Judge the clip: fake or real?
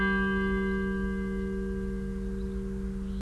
real